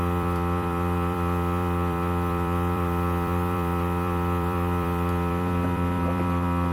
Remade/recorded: remade